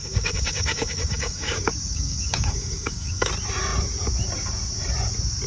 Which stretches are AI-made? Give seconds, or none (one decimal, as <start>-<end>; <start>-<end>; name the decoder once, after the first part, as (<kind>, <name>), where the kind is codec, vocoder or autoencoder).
0.0-3.3 (codec, DAC)